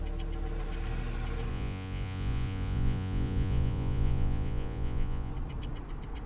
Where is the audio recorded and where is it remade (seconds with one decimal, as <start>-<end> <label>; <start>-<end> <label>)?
0.0-1.5 recorded; 1.5-5.3 remade; 5.3-6.3 recorded